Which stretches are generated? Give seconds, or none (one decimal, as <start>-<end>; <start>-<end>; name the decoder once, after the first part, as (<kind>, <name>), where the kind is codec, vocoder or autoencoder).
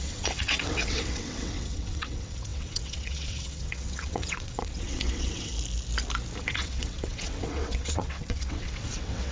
0.0-5.5 (vocoder, WaveNeXt); 6.4-9.3